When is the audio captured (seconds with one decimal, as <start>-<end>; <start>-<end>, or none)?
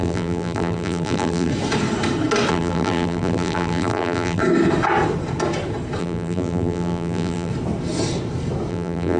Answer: 1.5-2.5; 4.4-6.0; 7.5-8.7